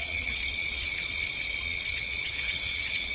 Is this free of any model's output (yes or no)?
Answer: no